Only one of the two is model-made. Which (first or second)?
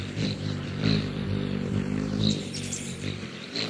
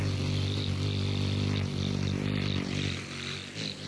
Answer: first